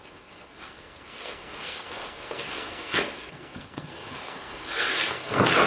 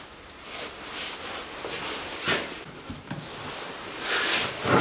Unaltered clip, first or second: second